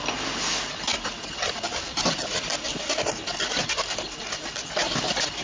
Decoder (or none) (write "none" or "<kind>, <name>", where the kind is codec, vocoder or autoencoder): none